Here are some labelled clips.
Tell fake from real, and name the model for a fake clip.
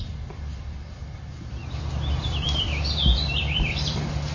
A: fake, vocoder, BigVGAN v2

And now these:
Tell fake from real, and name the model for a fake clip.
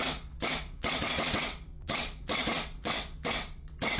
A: fake, vocoder, WaveNeXt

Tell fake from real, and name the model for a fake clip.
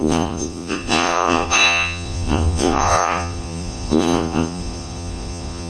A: fake, vocoder, Vocos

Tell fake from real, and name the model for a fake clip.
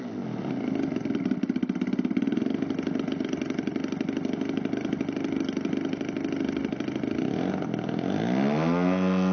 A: real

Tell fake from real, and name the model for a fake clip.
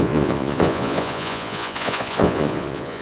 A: fake, vocoder, Vocos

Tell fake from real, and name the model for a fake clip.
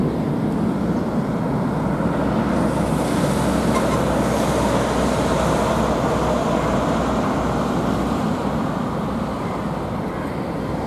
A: real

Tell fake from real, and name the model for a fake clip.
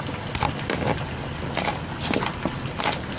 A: real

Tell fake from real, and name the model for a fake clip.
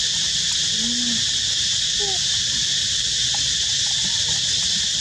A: real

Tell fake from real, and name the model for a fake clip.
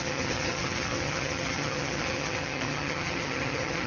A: fake, vocoder, HiFi-GAN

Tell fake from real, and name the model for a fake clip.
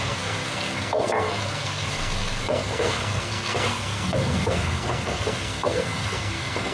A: fake, codec, SNAC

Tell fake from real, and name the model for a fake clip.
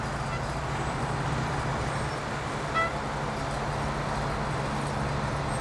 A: real